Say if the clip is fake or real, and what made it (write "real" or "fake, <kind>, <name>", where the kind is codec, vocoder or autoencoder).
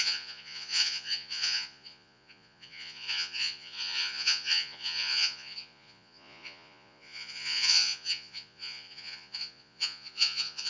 fake, vocoder, Vocos